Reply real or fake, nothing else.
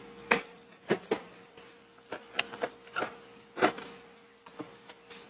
real